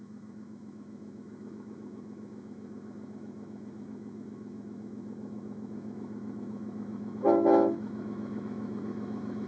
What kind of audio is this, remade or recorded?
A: remade